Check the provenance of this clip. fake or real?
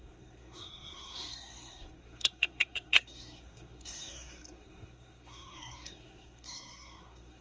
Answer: fake